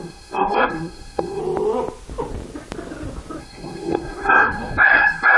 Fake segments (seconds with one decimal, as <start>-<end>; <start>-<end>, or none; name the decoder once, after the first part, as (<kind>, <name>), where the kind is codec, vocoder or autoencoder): 0.0-1.4 (codec, SNAC); 3.4-5.4